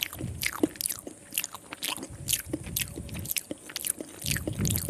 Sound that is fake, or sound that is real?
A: real